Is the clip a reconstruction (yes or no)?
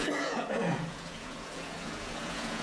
yes